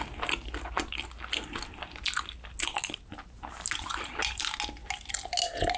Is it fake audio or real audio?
real